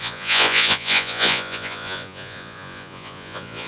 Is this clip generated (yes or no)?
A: yes